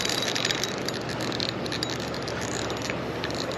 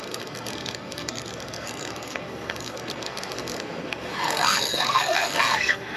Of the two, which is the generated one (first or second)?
second